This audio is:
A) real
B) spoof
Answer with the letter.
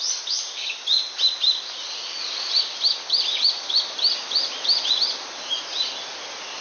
A